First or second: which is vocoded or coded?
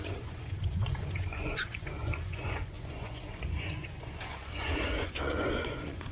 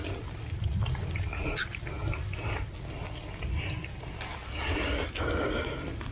first